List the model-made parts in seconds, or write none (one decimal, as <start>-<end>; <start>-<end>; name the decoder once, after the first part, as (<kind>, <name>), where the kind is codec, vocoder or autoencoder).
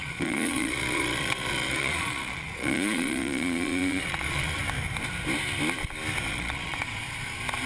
0.0-4.6 (vocoder, Vocos); 6.3-7.0